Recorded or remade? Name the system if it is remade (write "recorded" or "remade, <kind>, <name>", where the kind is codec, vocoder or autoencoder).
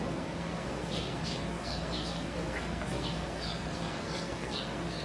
remade, codec, SNAC